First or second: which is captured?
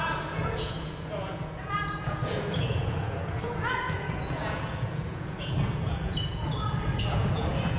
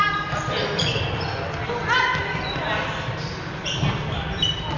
second